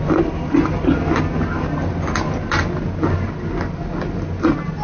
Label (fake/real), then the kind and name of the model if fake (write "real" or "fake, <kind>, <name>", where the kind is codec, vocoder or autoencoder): real